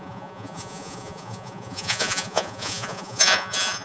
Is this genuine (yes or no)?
no